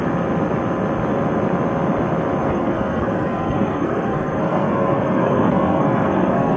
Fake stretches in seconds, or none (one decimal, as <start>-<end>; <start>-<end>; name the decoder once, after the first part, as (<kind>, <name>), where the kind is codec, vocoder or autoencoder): 2.4-6.6 (codec, SNAC)

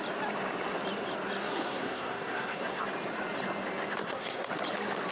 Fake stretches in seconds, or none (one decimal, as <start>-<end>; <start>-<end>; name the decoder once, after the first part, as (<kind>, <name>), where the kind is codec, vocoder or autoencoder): 1.4-2.8 (codec, SNAC); 4.0-4.5

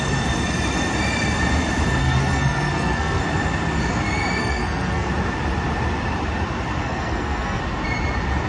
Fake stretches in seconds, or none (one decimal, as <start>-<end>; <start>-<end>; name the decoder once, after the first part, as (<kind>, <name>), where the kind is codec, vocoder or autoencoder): 2.0-3.2 (codec, SNAC); 4.4-5.1; 6.8-7.6

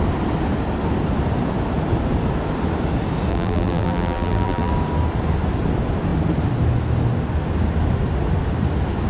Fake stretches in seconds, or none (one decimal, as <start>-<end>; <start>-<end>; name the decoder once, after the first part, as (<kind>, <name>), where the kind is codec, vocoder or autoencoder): 3.3-4.7 (vocoder, BigVGAN v2)

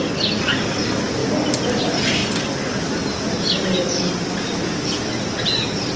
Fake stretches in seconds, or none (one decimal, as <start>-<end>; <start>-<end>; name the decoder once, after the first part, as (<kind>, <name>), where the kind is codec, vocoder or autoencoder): none

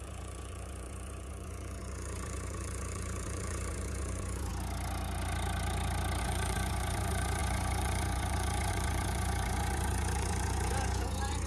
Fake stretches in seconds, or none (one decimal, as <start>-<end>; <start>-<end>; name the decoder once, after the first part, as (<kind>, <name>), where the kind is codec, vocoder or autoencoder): 0.0-4.5 (vocoder, Vocos); 6.2-11.5

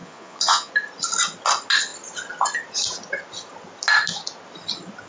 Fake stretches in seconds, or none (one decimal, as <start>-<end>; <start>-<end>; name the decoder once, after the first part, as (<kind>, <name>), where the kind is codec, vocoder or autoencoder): 0.0-0.7 (vocoder, Vocos)